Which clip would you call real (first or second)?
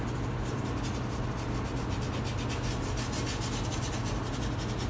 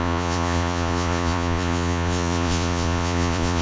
first